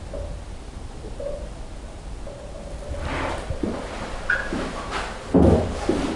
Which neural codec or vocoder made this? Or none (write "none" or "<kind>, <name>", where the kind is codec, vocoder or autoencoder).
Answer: none